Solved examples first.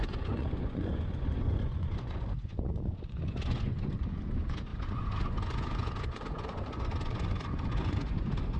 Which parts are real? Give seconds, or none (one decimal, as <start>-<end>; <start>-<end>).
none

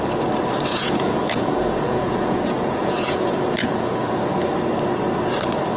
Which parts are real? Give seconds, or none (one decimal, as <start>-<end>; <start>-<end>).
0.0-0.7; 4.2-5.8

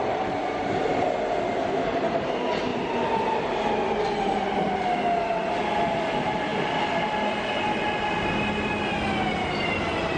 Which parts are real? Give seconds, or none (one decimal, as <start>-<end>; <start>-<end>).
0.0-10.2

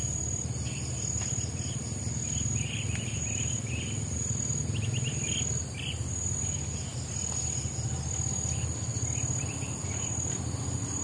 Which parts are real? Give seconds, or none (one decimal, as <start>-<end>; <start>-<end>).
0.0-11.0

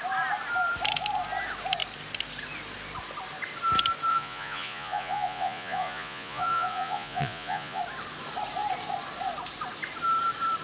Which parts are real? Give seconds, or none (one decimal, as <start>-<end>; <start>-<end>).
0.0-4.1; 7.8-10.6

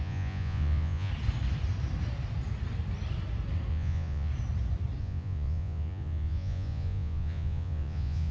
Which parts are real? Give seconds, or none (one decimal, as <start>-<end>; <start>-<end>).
1.1-3.7; 4.3-5.0